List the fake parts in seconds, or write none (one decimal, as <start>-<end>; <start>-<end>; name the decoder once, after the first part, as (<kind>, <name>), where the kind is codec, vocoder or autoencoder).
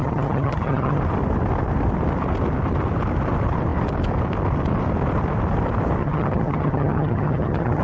0.0-1.0 (vocoder, HiFi-GAN); 6.0-7.8